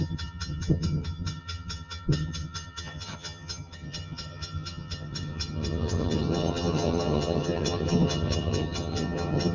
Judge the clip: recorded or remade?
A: remade